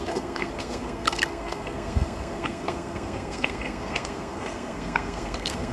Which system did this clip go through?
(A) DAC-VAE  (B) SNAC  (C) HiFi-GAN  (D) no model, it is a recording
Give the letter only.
B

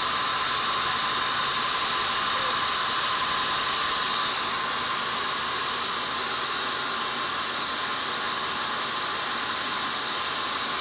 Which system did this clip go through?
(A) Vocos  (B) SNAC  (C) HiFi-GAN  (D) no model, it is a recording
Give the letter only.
D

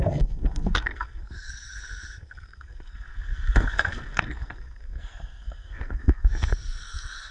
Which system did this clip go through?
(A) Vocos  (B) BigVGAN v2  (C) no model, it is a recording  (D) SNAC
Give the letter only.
D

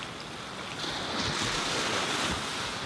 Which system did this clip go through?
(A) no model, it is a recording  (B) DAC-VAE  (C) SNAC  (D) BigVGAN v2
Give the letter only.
A